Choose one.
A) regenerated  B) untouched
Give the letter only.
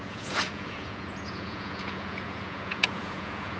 A